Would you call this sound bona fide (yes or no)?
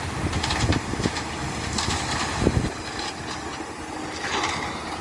yes